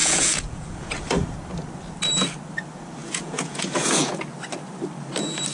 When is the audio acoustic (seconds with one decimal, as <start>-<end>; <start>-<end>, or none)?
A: 0.9-3.0; 4.2-5.5